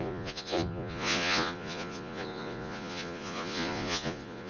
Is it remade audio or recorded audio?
remade